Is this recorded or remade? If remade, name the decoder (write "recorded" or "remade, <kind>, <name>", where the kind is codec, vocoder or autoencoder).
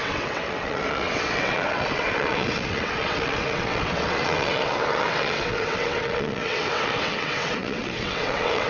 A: remade, vocoder, WaveNeXt